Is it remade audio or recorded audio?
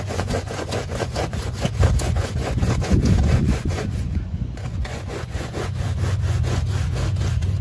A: remade